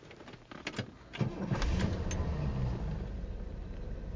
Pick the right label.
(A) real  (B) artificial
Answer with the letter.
A